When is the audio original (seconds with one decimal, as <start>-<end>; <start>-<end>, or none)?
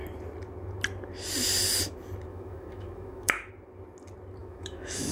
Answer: 0.0-2.3; 3.5-4.4